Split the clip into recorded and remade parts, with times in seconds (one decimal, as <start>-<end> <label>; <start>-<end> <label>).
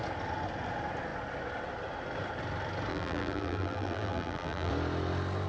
0.0-2.9 recorded; 2.9-4.7 remade; 4.7-5.5 recorded